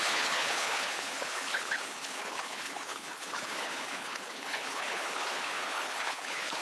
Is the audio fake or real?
fake